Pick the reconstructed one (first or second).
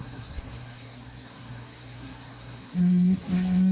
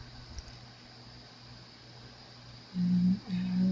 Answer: first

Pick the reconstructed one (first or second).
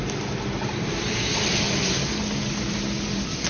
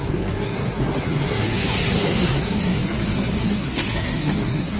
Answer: second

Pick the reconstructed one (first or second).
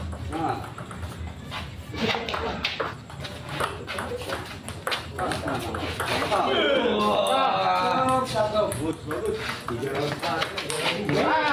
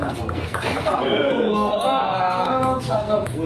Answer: second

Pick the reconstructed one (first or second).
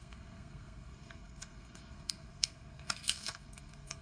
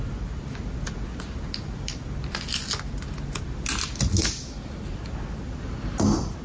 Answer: first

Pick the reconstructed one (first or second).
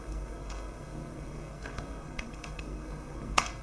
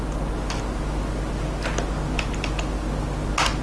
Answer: first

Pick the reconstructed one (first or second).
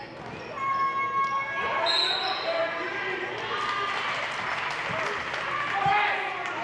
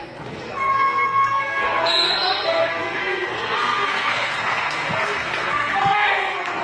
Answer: second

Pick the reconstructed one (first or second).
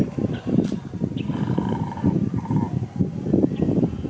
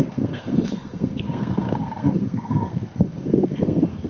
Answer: second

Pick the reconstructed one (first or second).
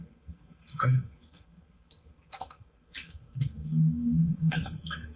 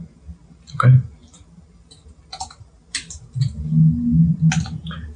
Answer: first